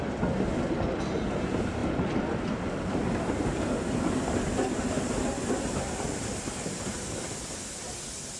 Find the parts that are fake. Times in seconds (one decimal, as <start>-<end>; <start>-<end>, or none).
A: 1.8-6.5